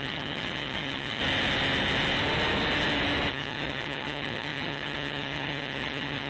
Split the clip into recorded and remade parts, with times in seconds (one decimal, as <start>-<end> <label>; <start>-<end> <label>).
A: 0.0-1.2 remade; 1.2-3.3 recorded; 3.3-6.3 remade